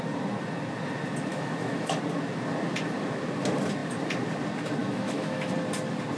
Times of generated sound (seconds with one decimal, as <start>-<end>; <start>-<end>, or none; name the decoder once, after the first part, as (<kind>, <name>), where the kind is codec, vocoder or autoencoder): 1.3-2.0 (autoencoder, DAC-VAE); 4.8-5.5